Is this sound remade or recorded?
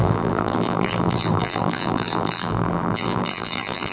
remade